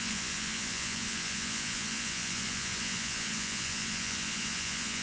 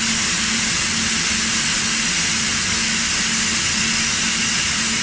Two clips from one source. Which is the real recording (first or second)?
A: second